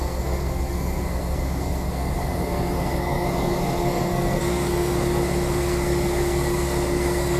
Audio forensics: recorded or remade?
remade